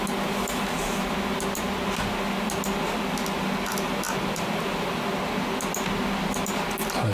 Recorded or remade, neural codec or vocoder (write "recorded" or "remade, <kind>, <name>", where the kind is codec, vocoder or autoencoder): recorded